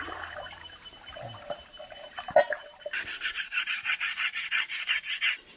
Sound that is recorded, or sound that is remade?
remade